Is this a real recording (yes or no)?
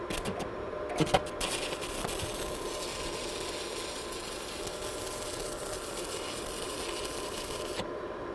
yes